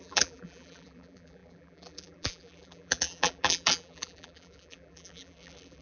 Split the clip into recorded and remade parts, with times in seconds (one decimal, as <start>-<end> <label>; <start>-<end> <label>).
0.0-5.8 remade